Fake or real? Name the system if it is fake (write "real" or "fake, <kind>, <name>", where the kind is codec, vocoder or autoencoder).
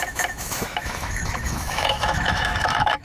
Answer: fake, autoencoder, DAC-VAE